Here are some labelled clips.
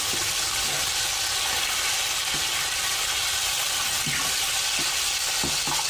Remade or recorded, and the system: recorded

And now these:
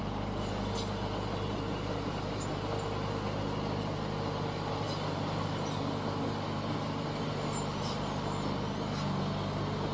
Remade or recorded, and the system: recorded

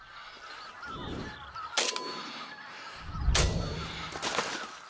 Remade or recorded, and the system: recorded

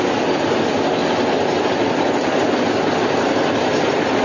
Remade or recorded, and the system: recorded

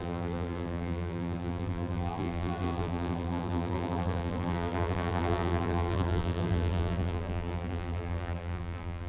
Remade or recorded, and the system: remade, vocoder, BigVGAN v2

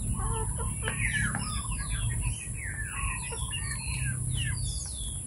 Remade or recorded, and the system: recorded